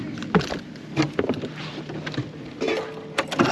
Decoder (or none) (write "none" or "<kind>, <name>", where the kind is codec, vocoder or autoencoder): none